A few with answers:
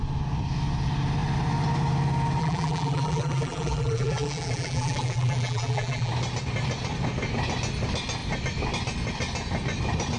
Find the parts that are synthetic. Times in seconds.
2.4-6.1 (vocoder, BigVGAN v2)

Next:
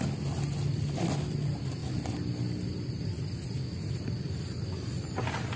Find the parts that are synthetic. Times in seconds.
none

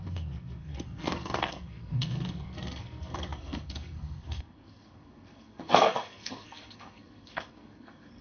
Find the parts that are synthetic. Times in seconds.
0.0-8.2 (codec, SNAC)

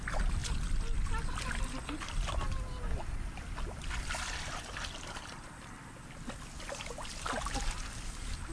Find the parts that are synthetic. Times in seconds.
none

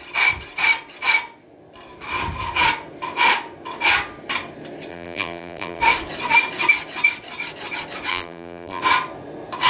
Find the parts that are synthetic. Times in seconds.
4.9-5.8 (vocoder, BigVGAN v2); 8.1-8.8

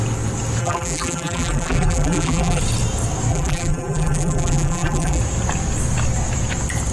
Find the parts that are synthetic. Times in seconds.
0.6-2.6 (vocoder, BigVGAN v2); 3.3-5.2

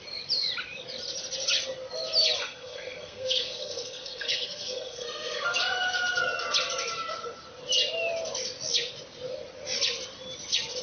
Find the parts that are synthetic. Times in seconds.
2.4-5.6 (codec, SNAC)

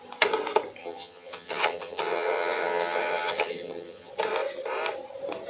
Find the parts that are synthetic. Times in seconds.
0.8-4.1 (vocoder, HiFi-GAN)